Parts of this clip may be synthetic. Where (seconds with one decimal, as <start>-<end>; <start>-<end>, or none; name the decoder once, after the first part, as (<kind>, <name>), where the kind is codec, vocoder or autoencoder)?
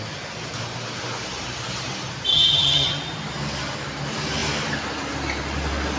2.3-3.0 (vocoder, HiFi-GAN)